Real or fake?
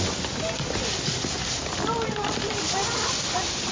real